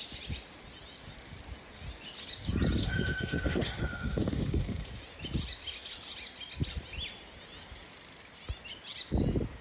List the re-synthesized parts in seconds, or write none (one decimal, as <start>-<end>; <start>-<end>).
2.8-4.9